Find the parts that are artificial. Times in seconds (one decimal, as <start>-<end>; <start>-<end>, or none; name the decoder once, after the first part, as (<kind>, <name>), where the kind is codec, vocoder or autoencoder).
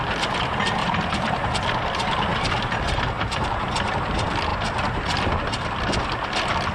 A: 0.8-1.5 (vocoder, BigVGAN v2); 2.3-3.9